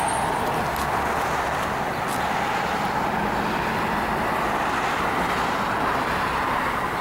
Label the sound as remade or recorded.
recorded